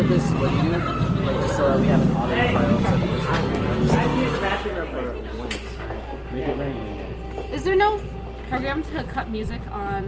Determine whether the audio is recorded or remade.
recorded